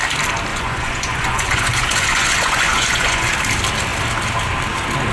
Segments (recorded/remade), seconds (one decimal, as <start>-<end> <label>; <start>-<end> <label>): 0.0-0.5 recorded; 0.5-3.3 remade; 3.3-5.1 recorded